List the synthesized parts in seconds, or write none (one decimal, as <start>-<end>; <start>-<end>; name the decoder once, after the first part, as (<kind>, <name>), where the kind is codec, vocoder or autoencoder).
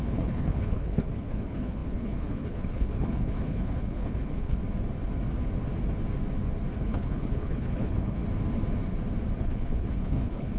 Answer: 0.0-4.6 (codec, HILCodec); 6.8-8.2; 9.4-10.6